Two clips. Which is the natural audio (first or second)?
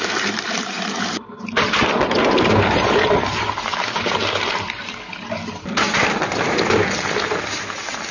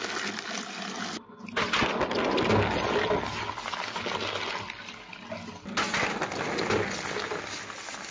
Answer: second